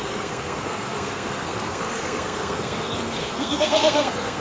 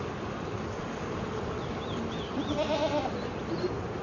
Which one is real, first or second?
second